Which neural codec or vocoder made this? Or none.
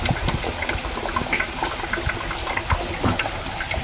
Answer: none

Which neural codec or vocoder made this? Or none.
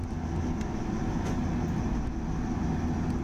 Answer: none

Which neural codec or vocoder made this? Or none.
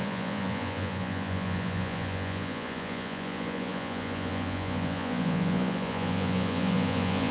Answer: vocoder, Vocos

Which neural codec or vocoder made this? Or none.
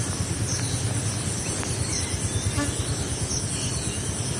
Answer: none